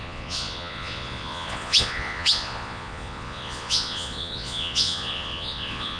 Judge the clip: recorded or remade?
remade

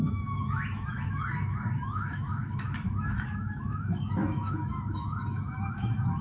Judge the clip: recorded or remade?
remade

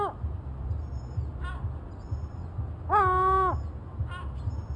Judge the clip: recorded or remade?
recorded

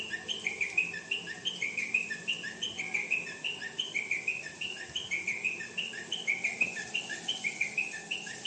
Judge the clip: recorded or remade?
recorded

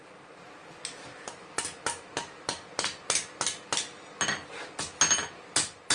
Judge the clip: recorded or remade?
recorded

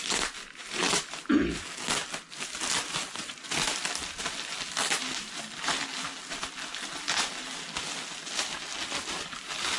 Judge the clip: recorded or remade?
recorded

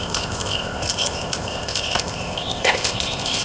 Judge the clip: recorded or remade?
remade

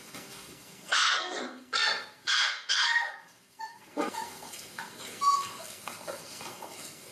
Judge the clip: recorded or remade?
remade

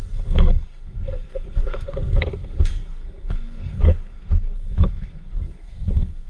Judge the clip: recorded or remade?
remade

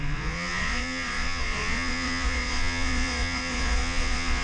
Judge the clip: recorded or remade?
remade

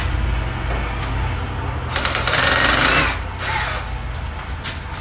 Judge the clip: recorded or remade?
recorded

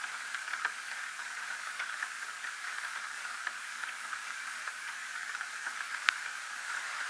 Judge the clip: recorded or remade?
remade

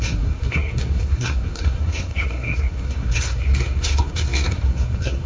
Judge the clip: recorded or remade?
remade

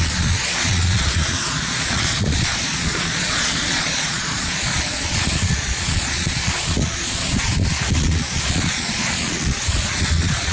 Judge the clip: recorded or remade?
remade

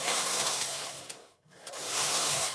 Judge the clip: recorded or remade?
remade